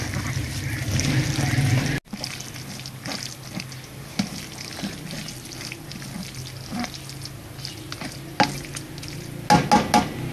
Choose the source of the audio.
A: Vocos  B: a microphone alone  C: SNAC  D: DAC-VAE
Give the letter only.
B